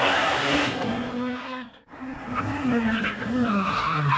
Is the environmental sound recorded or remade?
remade